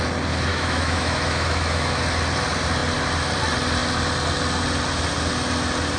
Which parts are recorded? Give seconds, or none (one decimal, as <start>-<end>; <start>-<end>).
0.0-0.5; 2.0-6.0